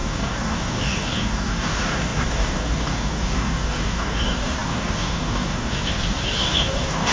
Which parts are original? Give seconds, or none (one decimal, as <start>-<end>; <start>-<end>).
none